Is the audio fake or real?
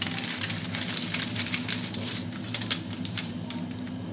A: real